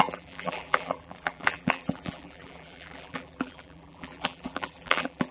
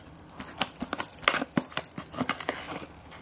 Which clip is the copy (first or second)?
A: first